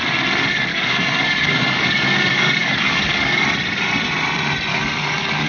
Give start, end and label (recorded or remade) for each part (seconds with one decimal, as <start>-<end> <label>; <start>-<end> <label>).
0.0-0.7 recorded; 0.7-3.4 remade; 3.4-4.7 recorded; 4.7-5.5 remade